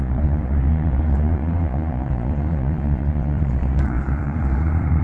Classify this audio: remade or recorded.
remade